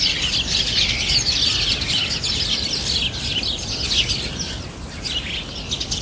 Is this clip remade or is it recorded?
recorded